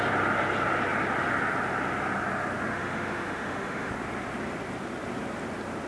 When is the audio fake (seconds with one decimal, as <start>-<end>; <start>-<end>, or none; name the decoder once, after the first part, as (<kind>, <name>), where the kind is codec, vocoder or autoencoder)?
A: 2.7-3.9 (autoencoder, DAC-VAE)